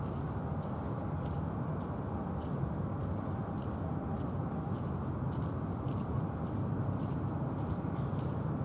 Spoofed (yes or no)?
no